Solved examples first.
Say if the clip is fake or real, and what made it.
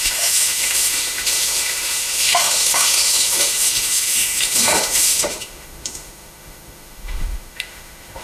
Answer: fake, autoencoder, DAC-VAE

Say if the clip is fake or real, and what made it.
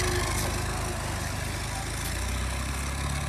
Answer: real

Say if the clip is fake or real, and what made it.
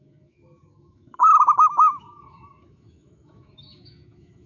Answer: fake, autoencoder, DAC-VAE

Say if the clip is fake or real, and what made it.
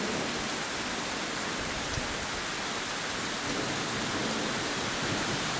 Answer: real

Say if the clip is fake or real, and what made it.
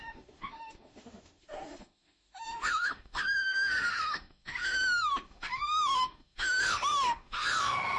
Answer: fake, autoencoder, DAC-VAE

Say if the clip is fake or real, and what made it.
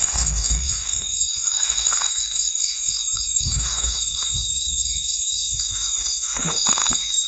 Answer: fake, autoencoder, DAC-VAE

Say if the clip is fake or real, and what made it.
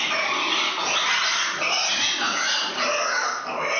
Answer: real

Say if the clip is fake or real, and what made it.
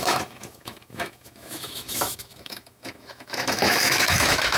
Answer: fake, autoencoder, DAC-VAE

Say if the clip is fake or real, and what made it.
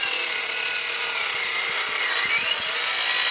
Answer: real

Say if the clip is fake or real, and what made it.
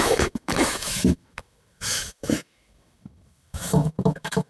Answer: fake, autoencoder, DAC-VAE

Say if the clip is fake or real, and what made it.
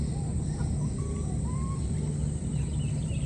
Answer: real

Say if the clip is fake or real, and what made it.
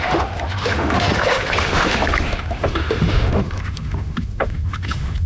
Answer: fake, autoencoder, DAC-VAE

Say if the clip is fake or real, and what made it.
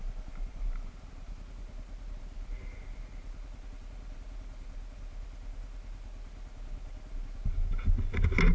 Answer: real